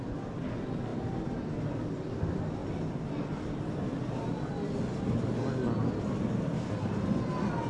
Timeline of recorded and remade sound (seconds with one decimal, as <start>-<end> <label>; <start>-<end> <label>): 0.0-0.9 recorded; 0.9-1.5 remade; 1.5-7.7 recorded